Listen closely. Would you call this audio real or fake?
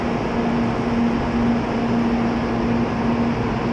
real